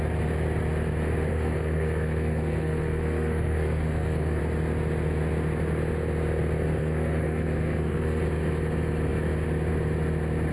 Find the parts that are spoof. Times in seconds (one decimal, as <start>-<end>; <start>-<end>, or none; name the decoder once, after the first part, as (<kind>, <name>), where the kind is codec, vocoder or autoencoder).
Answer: 1.3-4.4 (codec, SNAC); 6.8-8.2